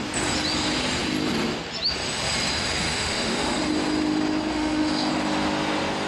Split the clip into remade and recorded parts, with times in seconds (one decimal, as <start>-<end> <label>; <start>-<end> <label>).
0.0-2.9 recorded; 2.9-3.6 remade; 3.6-4.5 recorded; 4.5-5.1 remade; 5.1-6.1 recorded